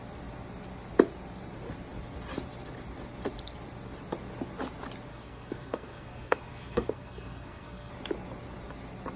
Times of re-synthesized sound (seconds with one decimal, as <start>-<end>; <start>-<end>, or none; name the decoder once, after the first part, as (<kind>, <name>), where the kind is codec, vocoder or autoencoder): 5.1-7.9 (codec, SNAC)